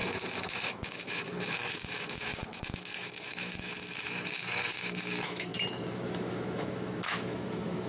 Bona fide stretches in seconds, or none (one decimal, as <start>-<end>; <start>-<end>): none